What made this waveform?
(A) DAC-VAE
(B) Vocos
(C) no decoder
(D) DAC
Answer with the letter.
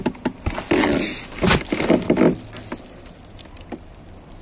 C